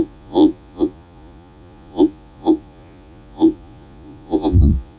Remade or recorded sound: remade